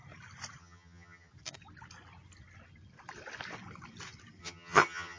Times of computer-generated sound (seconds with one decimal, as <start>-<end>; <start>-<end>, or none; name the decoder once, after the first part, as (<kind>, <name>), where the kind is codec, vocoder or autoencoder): 0.6-1.3 (vocoder, HiFi-GAN); 4.4-5.2